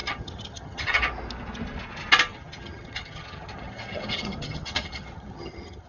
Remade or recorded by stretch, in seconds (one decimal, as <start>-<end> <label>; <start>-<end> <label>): 0.0-1.0 remade; 1.0-2.3 recorded; 2.3-5.9 remade